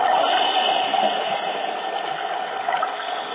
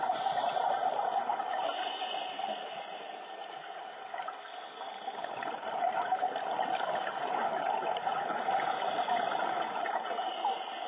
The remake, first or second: second